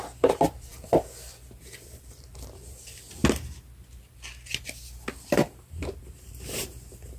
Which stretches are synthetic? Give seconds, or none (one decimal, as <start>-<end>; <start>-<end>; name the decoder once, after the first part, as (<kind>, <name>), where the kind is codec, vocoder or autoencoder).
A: 0.0-3.2 (vocoder, BigVGAN v2)